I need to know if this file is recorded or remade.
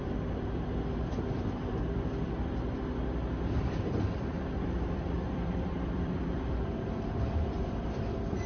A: remade